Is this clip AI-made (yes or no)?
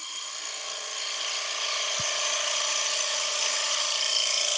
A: no